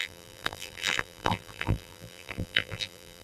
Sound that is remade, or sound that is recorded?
remade